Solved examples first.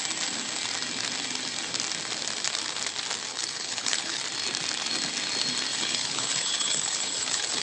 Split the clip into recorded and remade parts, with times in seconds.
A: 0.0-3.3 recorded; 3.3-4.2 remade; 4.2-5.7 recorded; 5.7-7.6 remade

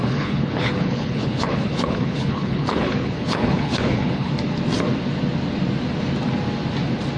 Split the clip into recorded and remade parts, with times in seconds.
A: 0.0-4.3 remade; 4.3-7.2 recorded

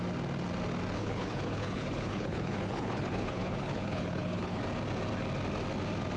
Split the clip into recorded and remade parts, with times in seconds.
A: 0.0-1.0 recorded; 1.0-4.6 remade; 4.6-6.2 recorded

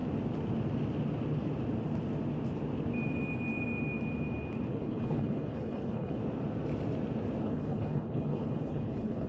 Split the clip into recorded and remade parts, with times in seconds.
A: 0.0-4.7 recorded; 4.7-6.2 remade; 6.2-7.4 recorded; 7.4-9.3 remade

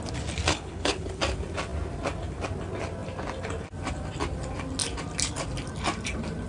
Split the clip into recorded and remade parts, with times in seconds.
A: 0.0-0.5 recorded; 0.5-1.1 remade; 1.1-6.5 recorded

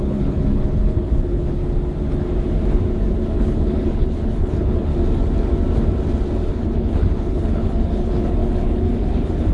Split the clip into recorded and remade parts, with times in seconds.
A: 0.0-1.6 remade; 1.6-3.2 recorded; 3.2-4.9 remade; 4.9-6.5 recorded; 6.5-9.5 remade

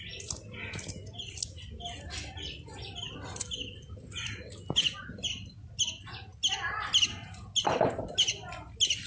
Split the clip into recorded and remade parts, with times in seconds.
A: 0.0-9.1 recorded